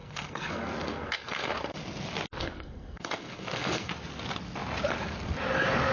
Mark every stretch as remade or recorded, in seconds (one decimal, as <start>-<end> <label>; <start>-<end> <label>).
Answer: 0.0-1.5 remade; 1.5-2.4 recorded; 2.4-3.9 remade; 3.9-5.9 recorded